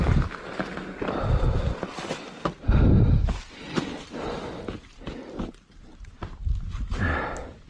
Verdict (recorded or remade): recorded